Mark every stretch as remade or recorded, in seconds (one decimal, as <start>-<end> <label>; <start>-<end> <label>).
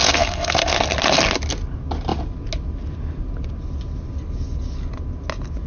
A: 0.0-0.8 remade; 0.8-5.7 recorded